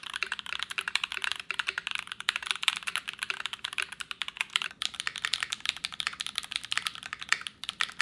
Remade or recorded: recorded